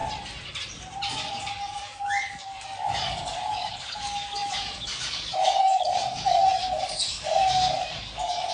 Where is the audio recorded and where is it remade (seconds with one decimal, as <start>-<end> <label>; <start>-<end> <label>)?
0.0-1.1 recorded; 1.1-8.5 remade